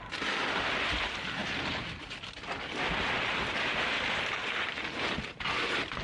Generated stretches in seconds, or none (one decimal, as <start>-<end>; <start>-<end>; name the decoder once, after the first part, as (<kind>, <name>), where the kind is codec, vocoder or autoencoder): none